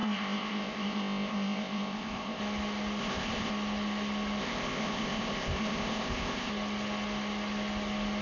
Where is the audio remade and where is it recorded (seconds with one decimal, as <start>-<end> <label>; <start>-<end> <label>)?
0.0-2.4 remade; 2.4-3.0 recorded; 3.0-3.5 remade; 3.5-4.4 recorded; 4.4-6.5 remade; 6.5-8.2 recorded